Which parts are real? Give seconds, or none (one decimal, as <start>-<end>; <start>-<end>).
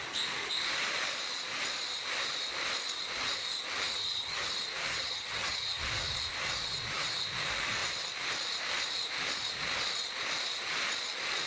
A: 0.0-4.0; 4.5-4.9; 5.8-11.5